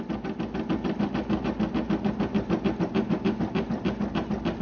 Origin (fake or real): real